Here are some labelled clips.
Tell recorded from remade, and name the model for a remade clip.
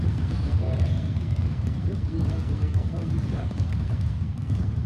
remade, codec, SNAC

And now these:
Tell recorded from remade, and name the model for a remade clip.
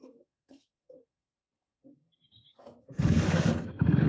remade, codec, SNAC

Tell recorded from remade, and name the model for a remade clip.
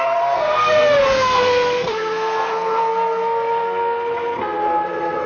remade, codec, SNAC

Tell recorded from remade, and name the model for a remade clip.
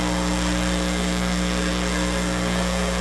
remade, codec, SNAC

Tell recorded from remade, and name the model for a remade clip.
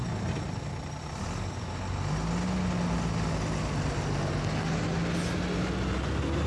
recorded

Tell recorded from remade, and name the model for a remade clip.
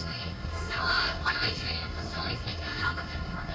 remade, codec, SNAC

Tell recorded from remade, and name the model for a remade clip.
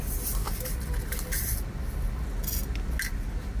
recorded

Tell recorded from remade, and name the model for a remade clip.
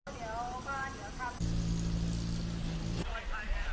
recorded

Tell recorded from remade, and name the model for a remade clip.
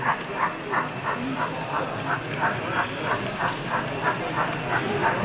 recorded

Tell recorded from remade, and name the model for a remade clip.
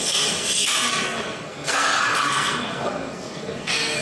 remade, codec, SNAC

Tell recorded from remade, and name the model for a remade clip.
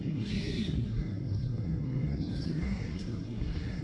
remade, codec, SNAC